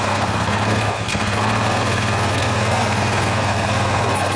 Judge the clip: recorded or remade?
remade